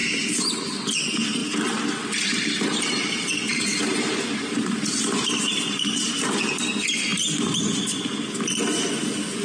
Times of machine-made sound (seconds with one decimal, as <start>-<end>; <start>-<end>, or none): 0.0-0.5; 1.4-6.6